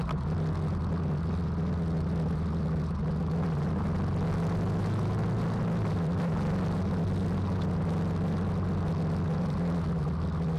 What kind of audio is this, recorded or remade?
recorded